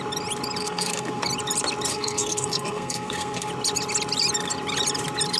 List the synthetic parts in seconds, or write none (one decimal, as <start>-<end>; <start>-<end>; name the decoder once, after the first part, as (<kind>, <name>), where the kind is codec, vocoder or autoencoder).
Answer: 0.6-1.2 (codec, SNAC); 1.9-3.5